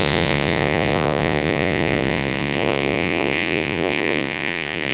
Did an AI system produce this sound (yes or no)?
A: yes